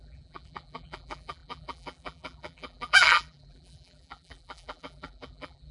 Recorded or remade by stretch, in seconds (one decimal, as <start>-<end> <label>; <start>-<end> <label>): 0.0-5.7 remade